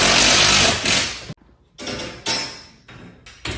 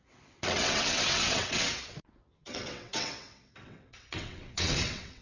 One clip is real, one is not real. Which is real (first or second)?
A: first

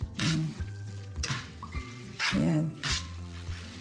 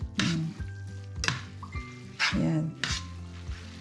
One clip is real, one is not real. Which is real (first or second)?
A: second